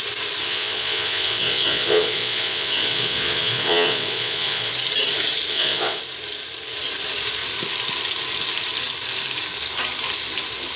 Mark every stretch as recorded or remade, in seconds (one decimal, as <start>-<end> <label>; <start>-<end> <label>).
0.0-0.4 recorded; 0.4-4.7 remade; 4.7-5.5 recorded; 5.5-6.0 remade; 6.0-10.8 recorded